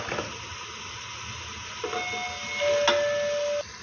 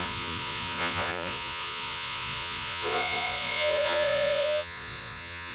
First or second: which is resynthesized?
second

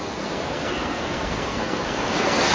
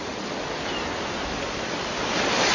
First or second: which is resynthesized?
first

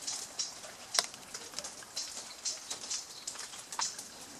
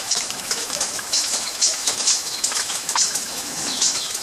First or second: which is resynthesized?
second